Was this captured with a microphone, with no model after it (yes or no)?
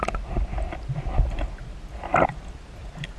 yes